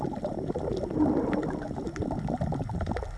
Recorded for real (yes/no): yes